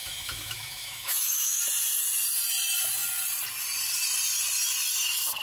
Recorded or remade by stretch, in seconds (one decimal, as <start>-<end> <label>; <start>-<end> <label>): 0.0-1.6 remade; 1.6-5.4 recorded